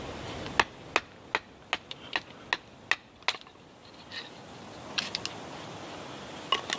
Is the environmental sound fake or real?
real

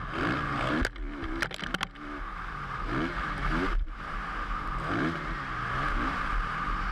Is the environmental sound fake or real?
real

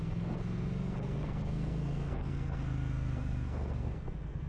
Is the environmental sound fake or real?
fake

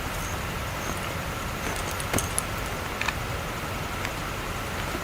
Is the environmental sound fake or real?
real